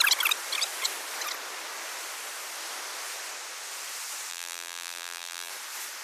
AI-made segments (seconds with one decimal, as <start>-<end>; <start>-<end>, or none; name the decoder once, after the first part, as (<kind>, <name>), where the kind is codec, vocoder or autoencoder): 4.3-5.5 (vocoder, BigVGAN v2)